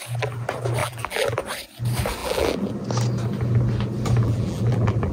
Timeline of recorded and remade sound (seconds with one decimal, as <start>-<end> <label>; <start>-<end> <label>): 0.0-0.8 recorded; 0.8-1.4 remade; 1.4-2.2 recorded; 2.2-2.7 remade; 2.7-4.2 recorded; 4.2-5.1 remade